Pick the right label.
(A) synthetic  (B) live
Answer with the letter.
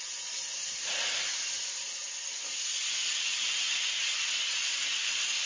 B